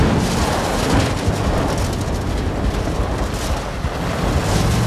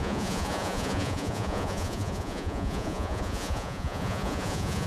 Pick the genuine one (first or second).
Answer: first